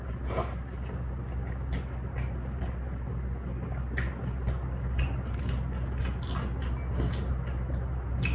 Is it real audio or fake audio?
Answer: real